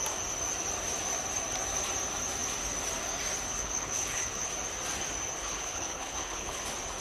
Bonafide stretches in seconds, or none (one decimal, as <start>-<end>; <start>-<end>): 0.0-3.5; 4.5-5.4; 6.6-7.0